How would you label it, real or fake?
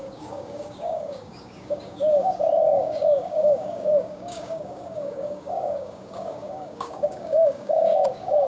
fake